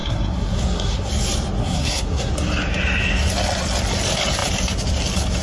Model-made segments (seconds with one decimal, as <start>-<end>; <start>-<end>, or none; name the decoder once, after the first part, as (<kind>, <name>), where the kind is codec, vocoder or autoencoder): 0.0-1.1 (codec, SNAC); 1.6-2.3